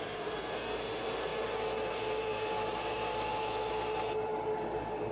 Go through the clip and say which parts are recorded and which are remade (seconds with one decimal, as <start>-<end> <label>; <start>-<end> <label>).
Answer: 0.0-5.1 recorded